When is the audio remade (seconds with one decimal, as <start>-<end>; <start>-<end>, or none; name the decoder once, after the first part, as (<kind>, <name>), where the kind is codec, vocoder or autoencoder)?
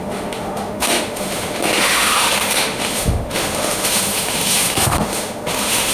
0.0-5.9 (autoencoder, DAC-VAE)